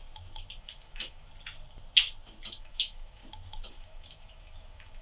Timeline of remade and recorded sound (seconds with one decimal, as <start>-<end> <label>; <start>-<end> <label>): 0.0-0.6 recorded; 0.6-1.3 remade; 1.3-2.6 recorded; 2.6-3.2 remade; 3.2-3.7 recorded; 3.7-5.0 remade

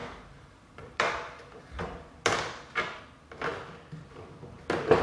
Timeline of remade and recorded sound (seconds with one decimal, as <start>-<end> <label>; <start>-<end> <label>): 0.0-3.0 remade; 3.0-5.0 recorded

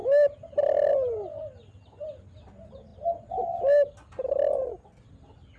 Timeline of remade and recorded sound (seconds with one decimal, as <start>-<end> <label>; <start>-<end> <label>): 0.0-5.6 recorded

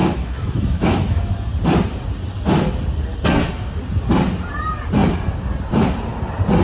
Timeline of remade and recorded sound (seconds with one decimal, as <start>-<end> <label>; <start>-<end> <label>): 0.0-1.3 remade; 1.3-6.6 recorded